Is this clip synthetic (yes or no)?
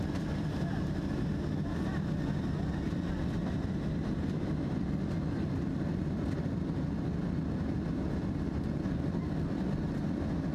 no